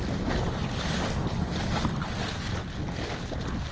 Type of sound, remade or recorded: recorded